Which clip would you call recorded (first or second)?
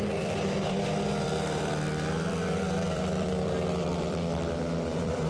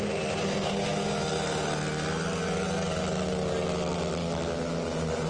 second